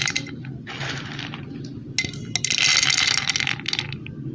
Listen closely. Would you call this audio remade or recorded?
recorded